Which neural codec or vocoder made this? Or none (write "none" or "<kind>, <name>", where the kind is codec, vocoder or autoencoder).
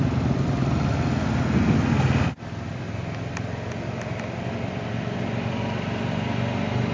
none